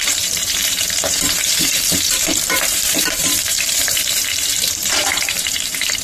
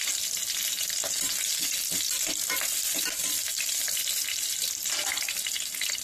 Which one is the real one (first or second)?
second